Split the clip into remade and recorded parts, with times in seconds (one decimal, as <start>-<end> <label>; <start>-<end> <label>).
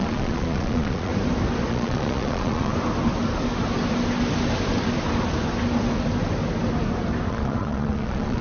0.0-1.1 remade; 1.1-1.7 recorded; 1.7-2.7 remade; 2.7-7.3 recorded; 7.3-8.4 remade